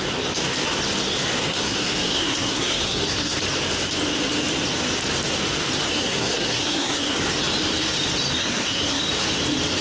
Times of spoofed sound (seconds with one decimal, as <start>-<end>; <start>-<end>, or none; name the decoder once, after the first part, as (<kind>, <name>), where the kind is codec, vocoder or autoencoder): 1.4-3.4 (codec, SNAC); 5.9-7.2; 8.4-9.0